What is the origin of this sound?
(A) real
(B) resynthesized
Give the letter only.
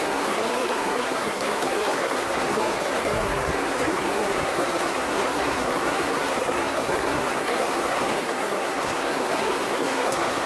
B